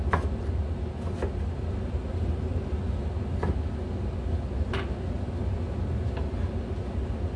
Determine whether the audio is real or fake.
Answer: real